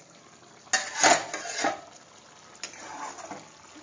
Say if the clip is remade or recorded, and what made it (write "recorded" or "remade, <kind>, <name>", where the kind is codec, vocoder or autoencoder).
recorded